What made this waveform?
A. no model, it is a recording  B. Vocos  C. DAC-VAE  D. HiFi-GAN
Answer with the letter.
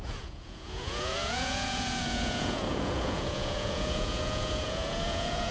B